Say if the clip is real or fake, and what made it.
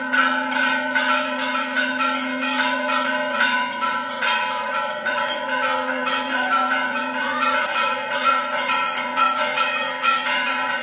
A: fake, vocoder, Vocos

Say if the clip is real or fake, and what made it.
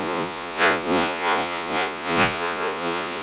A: fake, vocoder, Vocos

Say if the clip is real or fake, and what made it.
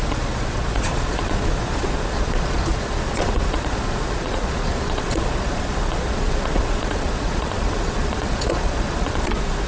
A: fake, vocoder, Vocos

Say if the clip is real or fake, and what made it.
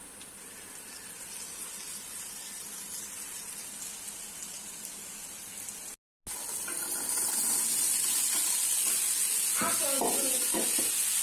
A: real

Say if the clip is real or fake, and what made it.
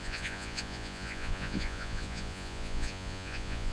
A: fake, vocoder, Vocos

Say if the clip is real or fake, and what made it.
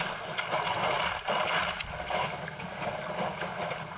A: real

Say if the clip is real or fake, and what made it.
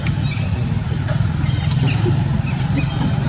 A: real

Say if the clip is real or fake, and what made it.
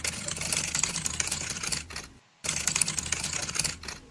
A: real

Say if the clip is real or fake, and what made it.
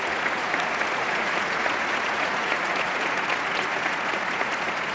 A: fake, vocoder, Vocos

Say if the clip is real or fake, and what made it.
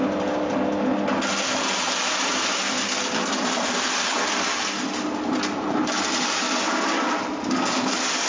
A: real